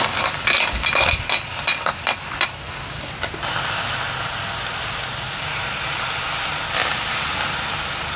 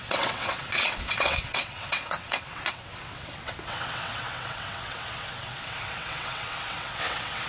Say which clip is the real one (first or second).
first